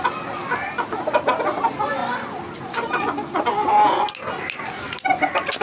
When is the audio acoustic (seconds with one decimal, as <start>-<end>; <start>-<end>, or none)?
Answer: 0.0-5.6